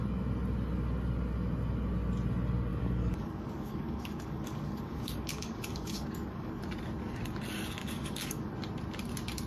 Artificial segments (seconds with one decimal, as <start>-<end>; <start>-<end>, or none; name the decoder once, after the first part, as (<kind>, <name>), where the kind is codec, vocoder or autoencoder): 2.7-6.6 (codec, DAC); 7.8-8.5